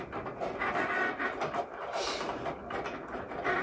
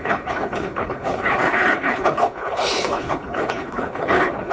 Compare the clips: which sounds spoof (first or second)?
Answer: second